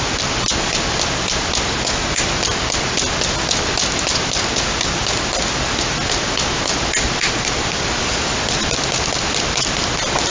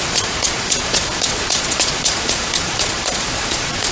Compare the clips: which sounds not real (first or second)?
second